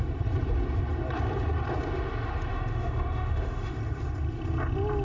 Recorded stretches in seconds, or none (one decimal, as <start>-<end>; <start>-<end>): 0.0-2.5; 3.8-5.0